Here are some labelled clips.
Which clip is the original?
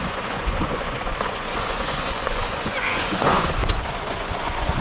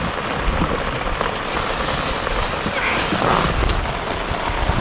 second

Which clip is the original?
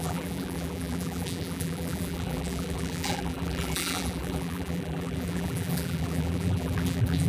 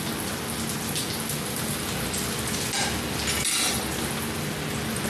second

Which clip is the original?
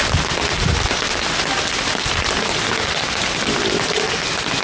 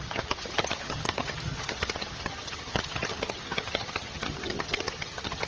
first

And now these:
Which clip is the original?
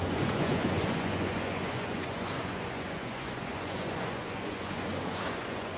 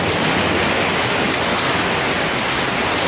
second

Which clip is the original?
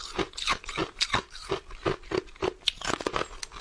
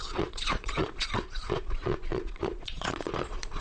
first